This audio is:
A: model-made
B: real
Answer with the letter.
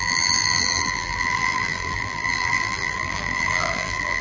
A